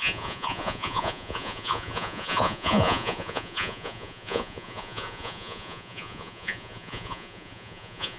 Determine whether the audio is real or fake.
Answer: fake